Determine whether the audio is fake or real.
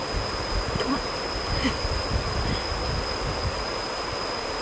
real